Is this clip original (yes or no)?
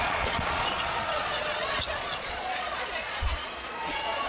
no